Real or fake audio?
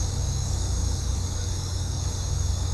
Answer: fake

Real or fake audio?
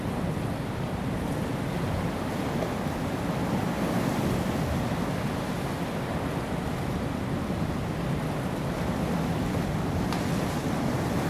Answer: real